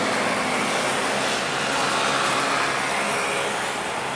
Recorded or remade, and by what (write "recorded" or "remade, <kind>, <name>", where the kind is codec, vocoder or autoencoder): recorded